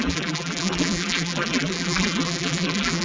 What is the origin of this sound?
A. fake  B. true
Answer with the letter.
A